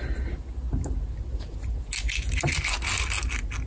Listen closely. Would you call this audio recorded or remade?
recorded